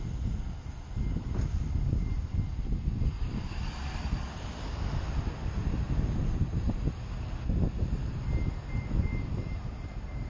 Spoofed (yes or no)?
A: no